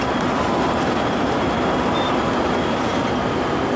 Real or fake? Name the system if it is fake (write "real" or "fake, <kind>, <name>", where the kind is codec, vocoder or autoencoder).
real